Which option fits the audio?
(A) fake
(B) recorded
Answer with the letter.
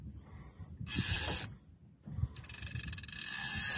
B